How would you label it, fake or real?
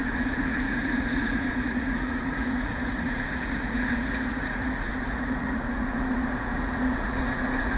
fake